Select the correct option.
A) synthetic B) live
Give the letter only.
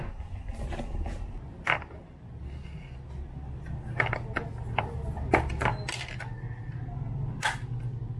B